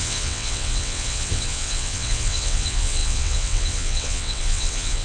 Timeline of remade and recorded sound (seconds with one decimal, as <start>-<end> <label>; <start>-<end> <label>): 0.0-5.0 remade